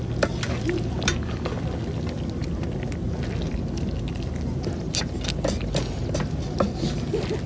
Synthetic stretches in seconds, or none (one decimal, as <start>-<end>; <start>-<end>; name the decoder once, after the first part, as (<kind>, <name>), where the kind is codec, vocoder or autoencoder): none